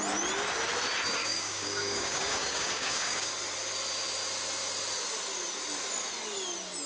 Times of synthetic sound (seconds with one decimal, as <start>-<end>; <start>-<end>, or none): 1.2-3.3